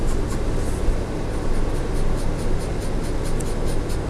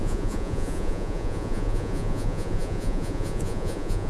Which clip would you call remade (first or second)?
second